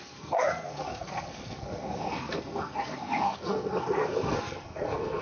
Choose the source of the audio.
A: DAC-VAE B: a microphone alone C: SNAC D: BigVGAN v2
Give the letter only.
C